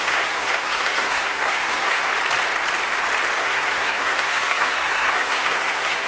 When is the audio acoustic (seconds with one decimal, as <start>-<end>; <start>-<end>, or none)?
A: 2.1-3.4